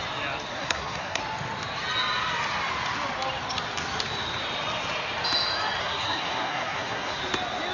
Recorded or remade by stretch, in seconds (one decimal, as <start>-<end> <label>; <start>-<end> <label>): 0.0-0.6 recorded; 0.6-1.2 remade; 1.2-5.8 recorded; 5.8-7.2 remade; 7.2-7.7 recorded